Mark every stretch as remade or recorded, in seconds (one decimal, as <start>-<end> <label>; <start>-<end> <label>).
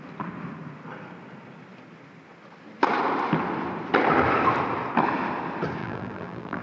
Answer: 0.0-5.8 recorded; 5.8-6.6 remade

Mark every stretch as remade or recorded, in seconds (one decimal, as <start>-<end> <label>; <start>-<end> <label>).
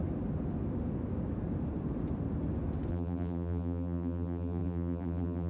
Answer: 0.0-2.9 recorded; 2.9-5.5 remade